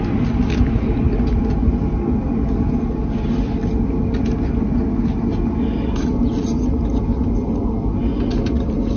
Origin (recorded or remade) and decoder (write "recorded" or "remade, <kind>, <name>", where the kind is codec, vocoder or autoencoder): recorded